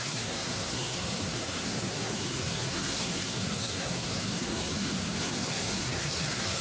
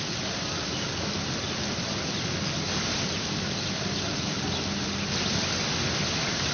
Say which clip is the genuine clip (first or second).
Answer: second